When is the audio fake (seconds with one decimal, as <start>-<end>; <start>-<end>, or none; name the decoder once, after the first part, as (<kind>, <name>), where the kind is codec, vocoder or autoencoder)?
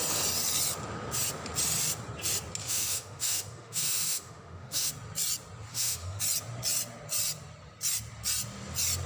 2.6-4.9 (autoencoder, DAC-VAE); 5.7-6.2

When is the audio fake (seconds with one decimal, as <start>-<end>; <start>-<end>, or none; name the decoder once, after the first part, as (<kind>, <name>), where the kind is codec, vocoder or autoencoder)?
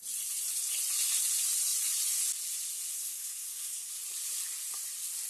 2.9-3.9 (codec, SNAC)